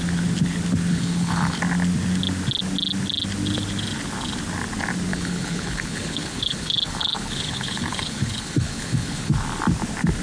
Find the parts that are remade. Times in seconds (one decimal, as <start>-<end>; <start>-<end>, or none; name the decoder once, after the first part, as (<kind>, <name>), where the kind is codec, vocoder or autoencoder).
0.9-1.6 (codec, HILCodec); 5.1-9.3